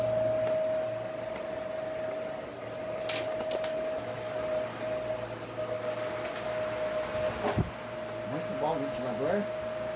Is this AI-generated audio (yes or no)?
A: no